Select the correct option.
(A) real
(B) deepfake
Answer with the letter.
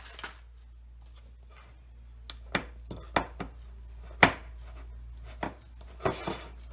A